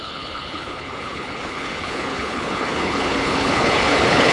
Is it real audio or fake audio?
fake